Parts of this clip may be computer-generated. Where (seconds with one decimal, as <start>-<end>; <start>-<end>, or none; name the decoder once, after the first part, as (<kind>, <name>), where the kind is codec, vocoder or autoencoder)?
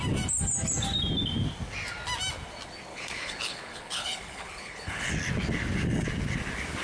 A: 2.9-5.1 (codec, HILCodec)